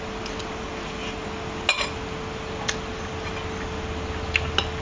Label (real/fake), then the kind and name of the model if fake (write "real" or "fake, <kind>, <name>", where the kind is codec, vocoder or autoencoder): real